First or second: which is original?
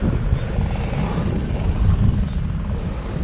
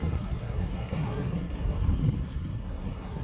first